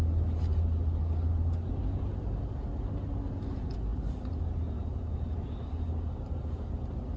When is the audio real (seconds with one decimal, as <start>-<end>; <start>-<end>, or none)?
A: 0.0-7.2

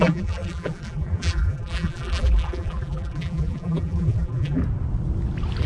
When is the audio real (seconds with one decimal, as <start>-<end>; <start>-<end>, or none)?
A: 4.6-5.7

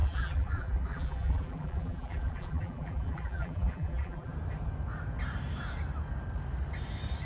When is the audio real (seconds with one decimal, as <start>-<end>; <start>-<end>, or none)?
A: 4.3-7.2